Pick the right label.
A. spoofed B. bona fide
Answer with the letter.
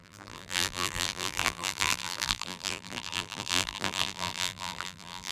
A